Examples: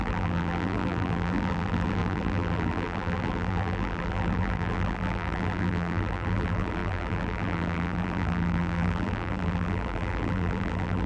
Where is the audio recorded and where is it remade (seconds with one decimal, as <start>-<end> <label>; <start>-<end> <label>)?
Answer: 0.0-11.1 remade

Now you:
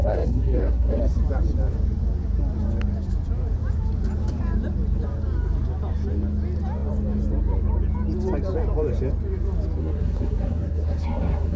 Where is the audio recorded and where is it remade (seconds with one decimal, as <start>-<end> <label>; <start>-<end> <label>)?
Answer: 0.0-1.0 remade; 1.0-9.8 recorded; 9.8-11.6 remade

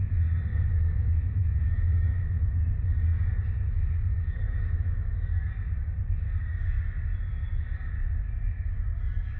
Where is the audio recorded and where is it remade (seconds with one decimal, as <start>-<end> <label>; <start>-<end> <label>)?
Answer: 0.0-0.5 recorded; 0.5-2.7 remade; 2.7-4.1 recorded; 4.1-5.5 remade; 5.5-9.4 recorded

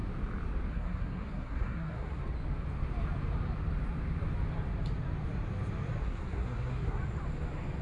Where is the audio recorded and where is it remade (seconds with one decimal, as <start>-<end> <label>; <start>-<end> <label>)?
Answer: 0.0-0.7 recorded; 0.7-2.2 remade; 2.2-6.0 recorded; 6.0-7.0 remade; 7.0-7.8 recorded